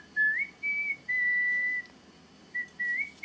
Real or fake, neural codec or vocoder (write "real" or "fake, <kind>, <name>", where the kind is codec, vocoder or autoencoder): real